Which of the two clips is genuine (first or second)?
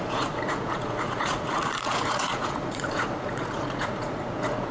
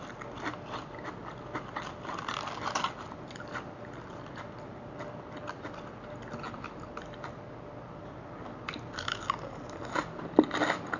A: second